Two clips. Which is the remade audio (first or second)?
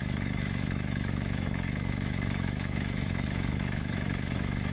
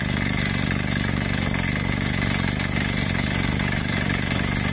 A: first